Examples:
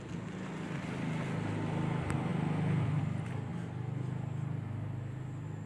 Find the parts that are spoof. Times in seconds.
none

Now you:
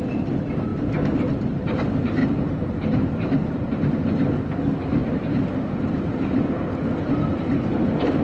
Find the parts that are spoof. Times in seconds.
2.2-3.9 (vocoder, BigVGAN v2)

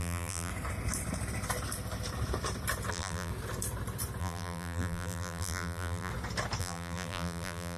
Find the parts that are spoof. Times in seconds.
0.0-0.5 (vocoder, BigVGAN v2); 2.9-3.3; 4.2-6.1; 6.6-7.8

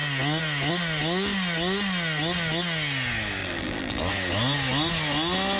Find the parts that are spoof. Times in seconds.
3.4-4.0 (vocoder, BigVGAN v2)